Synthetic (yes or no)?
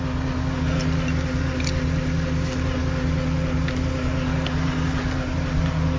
no